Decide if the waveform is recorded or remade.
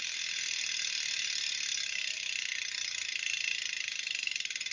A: recorded